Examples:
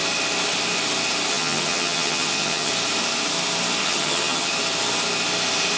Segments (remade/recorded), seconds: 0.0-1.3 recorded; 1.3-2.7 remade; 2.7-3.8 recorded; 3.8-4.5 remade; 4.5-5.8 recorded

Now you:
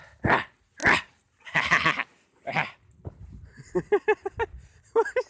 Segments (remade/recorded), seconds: 0.0-5.3 recorded

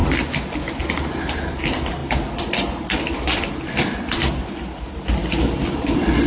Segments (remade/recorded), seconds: 0.0-6.3 recorded

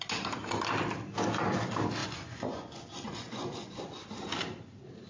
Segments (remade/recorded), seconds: 0.0-2.0 recorded; 2.0-3.8 remade; 3.8-5.1 recorded

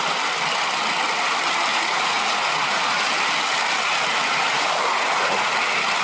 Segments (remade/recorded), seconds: 0.0-1.7 recorded; 1.7-3.1 remade; 3.1-4.9 recorded; 4.9-5.5 remade; 5.5-6.0 recorded

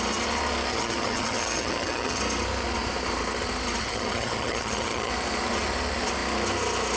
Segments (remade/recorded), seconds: 0.0-0.7 recorded; 0.7-2.2 remade; 2.2-3.8 recorded; 3.8-5.1 remade; 5.1-7.0 recorded